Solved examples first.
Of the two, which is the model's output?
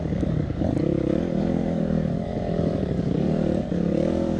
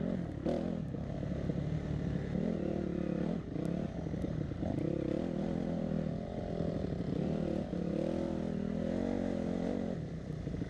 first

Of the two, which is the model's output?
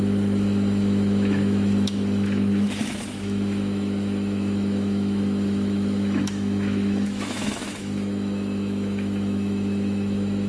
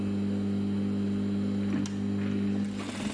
first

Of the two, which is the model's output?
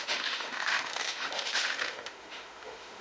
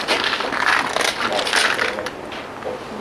first